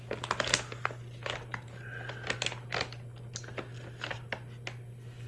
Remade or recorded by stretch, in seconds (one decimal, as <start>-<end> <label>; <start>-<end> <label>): 0.0-5.3 recorded